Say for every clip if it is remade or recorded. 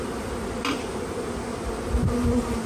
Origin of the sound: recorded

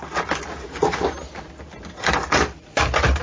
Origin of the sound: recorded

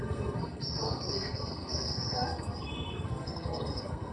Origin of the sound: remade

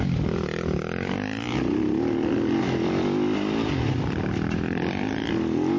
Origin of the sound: recorded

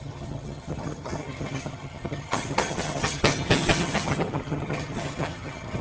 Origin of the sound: remade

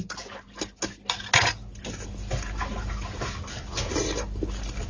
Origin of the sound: recorded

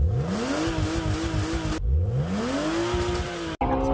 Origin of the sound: recorded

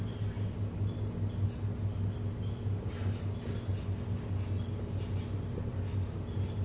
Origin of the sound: recorded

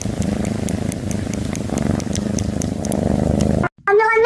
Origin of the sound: recorded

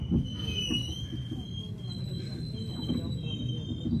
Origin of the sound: recorded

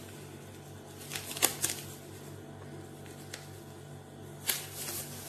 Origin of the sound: recorded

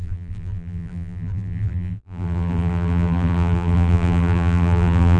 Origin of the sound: remade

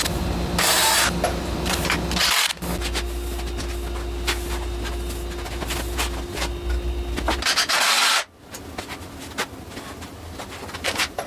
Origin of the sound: recorded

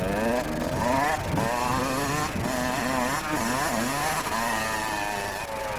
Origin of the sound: recorded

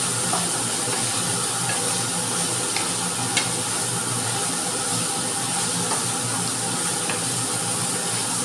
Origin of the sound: recorded